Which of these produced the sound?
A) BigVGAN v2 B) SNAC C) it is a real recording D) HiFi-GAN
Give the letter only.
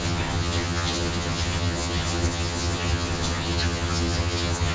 D